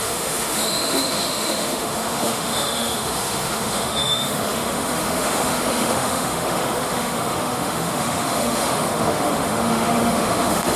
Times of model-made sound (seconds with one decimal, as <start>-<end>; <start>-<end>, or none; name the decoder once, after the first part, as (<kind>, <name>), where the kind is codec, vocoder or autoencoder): 0.0-10.8 (autoencoder, DAC-VAE)